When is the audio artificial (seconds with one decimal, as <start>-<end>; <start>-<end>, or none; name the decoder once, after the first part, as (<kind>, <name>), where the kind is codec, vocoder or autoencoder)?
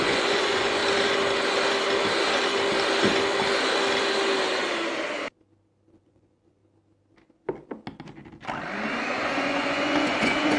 0.0-0.8 (vocoder, Vocos); 5.9-6.6; 9.0-10.6